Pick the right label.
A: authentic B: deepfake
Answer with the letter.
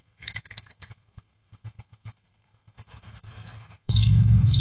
B